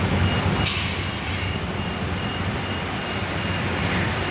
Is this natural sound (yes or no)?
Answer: yes